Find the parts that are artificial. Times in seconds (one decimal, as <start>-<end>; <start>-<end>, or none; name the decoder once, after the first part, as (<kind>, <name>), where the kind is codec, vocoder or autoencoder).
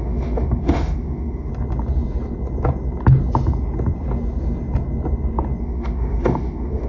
0.0-1.5 (autoencoder, DAC-VAE); 5.6-6.9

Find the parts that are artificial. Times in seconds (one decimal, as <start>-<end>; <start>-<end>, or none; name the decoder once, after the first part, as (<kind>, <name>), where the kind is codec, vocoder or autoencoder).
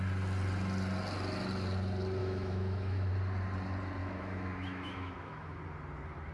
2.2-3.1 (autoencoder, DAC-VAE); 4.0-5.6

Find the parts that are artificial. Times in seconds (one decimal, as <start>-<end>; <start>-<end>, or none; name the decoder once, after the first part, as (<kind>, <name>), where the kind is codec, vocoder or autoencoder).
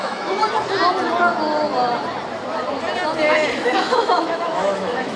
0.0-0.4 (autoencoder, DAC-VAE); 3.5-5.2